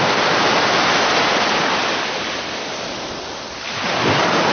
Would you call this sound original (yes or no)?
yes